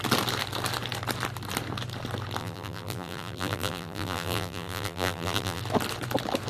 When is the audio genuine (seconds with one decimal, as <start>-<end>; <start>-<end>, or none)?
0.0-2.4; 5.6-6.5